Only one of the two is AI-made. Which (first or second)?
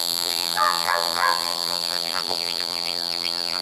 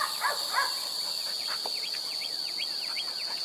first